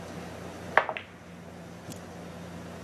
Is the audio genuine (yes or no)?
yes